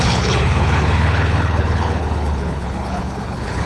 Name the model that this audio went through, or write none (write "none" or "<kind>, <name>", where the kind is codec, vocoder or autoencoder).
codec, HILCodec